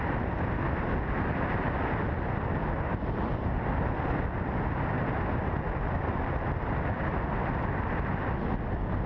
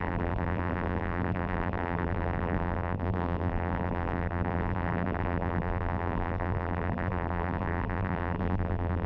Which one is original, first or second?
first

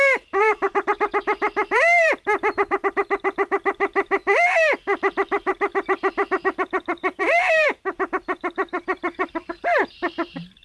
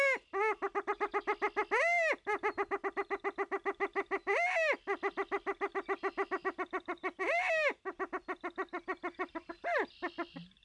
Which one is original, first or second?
second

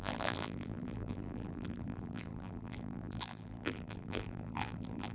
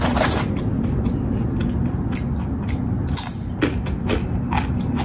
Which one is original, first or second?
second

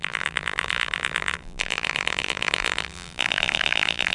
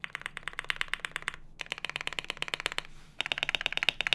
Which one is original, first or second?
second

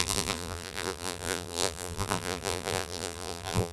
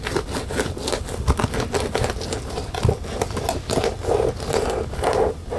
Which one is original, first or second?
second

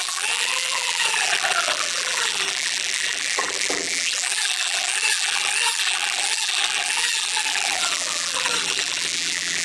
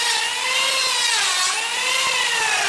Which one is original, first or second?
second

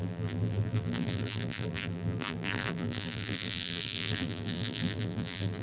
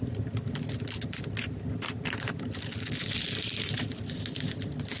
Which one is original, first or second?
second